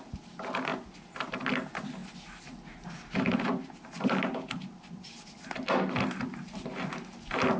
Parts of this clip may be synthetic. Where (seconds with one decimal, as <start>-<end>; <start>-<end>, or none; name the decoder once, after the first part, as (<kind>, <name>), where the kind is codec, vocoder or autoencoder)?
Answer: none